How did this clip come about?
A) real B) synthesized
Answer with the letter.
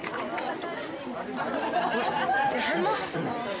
A